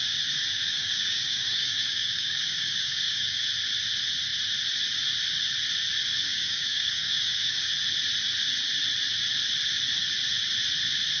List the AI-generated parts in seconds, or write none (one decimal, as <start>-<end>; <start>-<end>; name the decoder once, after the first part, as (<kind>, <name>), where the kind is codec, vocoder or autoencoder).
0.5-3.4 (codec, DAC); 6.1-7.7